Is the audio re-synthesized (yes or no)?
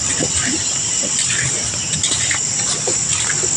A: no